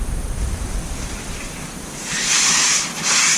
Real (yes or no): no